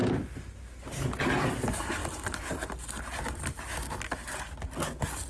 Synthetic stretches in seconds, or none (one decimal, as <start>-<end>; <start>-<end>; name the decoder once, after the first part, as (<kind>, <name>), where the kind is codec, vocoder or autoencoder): 3.5-4.0 (autoencoder, DAC-VAE)